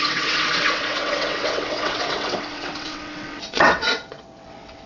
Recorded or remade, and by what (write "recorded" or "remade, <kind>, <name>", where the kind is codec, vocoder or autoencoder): remade, vocoder, WaveNeXt